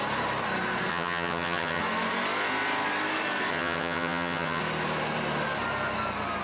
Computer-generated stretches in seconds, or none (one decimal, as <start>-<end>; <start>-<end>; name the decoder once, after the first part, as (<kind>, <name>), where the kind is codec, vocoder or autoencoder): 0.9-1.8 (vocoder, HiFi-GAN); 3.5-4.6